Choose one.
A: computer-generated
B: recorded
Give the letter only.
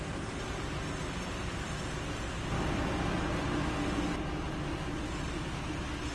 B